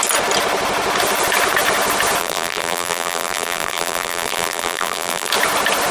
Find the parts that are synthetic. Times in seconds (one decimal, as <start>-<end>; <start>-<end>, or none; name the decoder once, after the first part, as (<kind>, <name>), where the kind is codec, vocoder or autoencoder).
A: 2.2-5.3 (vocoder, BigVGAN v2)